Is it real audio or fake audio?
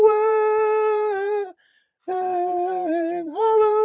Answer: fake